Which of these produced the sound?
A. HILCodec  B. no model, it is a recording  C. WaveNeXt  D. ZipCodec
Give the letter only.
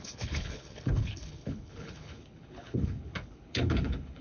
A